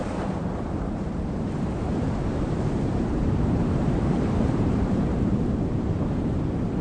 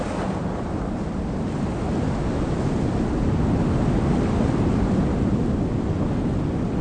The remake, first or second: first